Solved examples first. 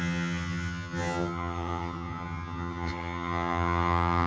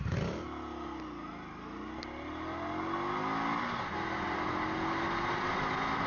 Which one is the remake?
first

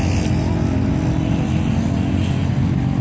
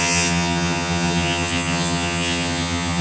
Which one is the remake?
second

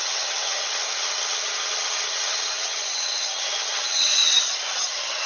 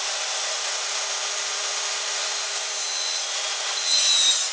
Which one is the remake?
first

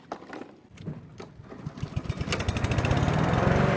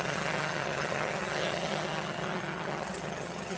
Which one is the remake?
second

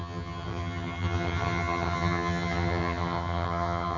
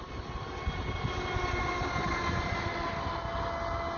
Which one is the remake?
first